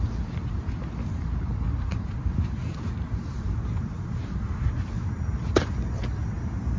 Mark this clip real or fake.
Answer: fake